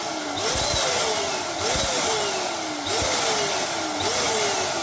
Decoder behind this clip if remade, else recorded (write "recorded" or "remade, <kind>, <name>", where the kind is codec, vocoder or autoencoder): recorded